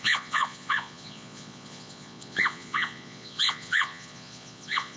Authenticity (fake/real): fake